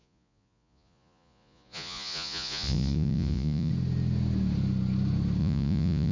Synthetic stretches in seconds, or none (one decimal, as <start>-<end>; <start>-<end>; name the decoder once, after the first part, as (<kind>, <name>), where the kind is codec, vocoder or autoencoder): 0.0-3.7 (vocoder, Vocos); 5.4-6.1